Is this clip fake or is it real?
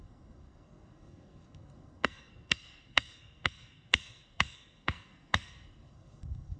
fake